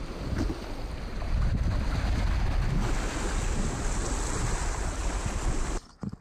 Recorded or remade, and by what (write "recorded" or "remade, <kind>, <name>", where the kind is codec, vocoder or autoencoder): recorded